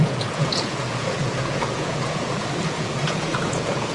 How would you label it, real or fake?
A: fake